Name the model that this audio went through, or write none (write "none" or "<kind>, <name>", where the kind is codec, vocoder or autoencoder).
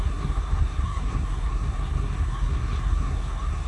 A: codec, SNAC